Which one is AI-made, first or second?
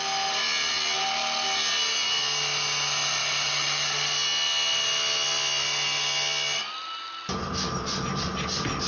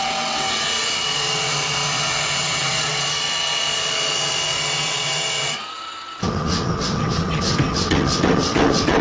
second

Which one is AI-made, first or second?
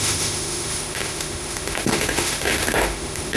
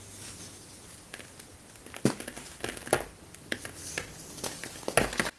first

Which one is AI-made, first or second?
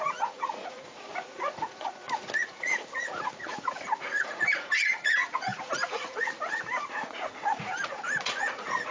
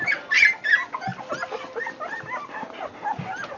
first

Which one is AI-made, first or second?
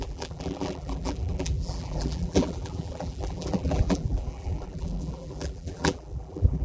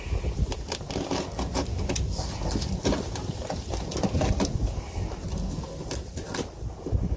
first